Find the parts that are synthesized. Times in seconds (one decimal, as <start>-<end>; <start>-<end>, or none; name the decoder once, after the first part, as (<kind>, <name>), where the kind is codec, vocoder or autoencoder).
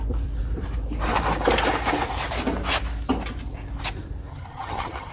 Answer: 4.3-5.1 (vocoder, HiFi-GAN)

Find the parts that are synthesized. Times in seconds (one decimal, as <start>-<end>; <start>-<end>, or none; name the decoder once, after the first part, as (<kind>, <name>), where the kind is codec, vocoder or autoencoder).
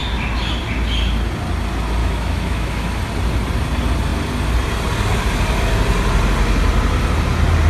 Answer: 2.0-3.0 (autoencoder, DAC-VAE)